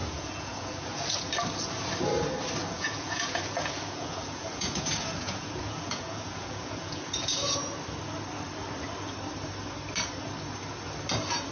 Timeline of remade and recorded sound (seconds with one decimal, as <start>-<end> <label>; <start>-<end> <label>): 0.0-1.3 remade; 1.3-2.6 recorded; 2.6-7.7 remade; 7.7-11.5 recorded